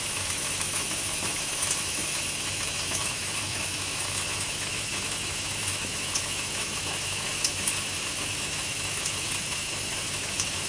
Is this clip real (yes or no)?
no